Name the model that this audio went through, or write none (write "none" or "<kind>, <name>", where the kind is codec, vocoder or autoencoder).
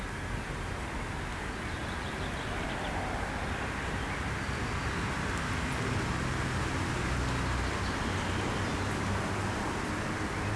none